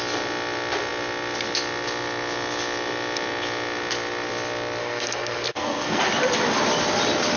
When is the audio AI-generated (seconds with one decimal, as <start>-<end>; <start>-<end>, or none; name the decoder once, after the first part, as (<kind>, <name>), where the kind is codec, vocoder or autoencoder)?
4.8-6.0 (codec, SNAC)